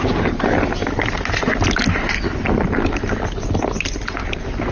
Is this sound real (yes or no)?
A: yes